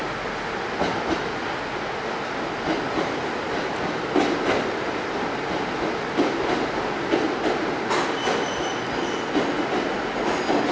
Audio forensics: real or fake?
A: real